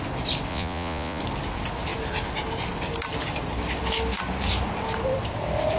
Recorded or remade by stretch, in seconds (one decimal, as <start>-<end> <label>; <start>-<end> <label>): 0.0-0.5 recorded; 0.5-1.2 remade; 1.2-5.8 recorded